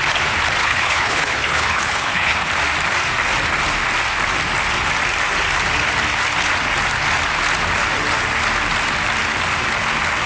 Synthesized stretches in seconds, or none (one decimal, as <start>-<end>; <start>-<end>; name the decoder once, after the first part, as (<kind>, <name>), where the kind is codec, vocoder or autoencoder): 0.6-2.5 (codec, HILCodec)